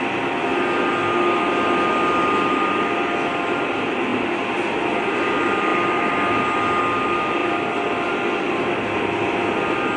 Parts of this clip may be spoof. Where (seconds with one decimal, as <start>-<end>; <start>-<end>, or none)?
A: none